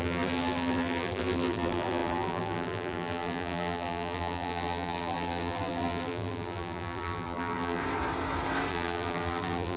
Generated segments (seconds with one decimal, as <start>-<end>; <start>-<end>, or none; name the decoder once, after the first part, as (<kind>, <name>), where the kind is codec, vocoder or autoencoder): 0.0-7.8 (vocoder, BigVGAN v2); 8.7-9.8